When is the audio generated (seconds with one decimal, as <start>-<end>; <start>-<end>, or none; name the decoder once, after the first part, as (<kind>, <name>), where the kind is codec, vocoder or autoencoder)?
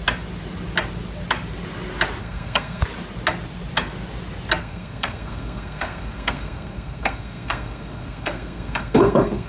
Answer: 2.2-2.8 (codec, SNAC); 4.6-9.5